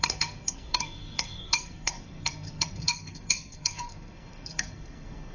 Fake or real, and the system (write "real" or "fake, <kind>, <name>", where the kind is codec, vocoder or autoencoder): fake, codec, SNAC